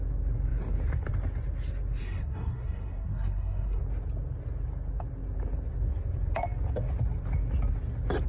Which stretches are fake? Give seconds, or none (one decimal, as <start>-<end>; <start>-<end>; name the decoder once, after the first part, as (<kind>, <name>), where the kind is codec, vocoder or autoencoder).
2.0-3.8 (codec, SNAC)